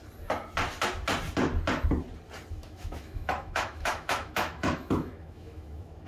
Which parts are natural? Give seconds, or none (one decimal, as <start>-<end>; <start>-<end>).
0.0-2.5